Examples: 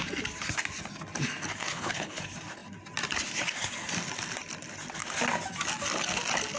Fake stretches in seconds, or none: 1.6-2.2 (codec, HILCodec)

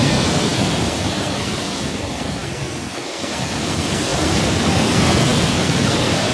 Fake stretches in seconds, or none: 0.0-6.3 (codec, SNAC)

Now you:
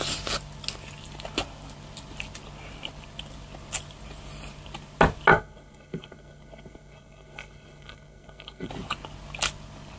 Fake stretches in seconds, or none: 5.3-8.7 (codec, SNAC)

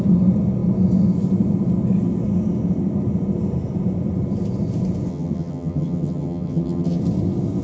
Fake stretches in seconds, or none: 5.1-7.0 (vocoder, HiFi-GAN)